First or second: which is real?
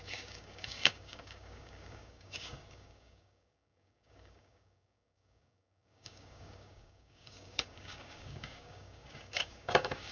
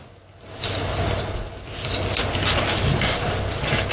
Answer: second